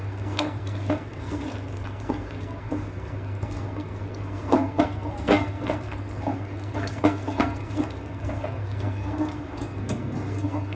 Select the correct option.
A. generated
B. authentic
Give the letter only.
A